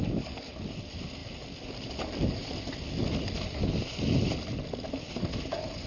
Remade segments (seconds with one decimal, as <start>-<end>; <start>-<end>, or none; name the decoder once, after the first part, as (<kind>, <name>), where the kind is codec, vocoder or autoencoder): none